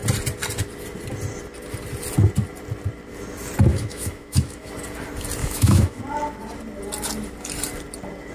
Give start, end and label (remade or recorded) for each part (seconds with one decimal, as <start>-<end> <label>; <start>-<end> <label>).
0.0-3.7 recorded; 3.7-4.7 remade; 4.7-5.4 recorded; 5.4-6.0 remade; 6.0-8.3 recorded